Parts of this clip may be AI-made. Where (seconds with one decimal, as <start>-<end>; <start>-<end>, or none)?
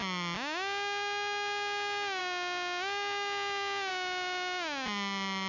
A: none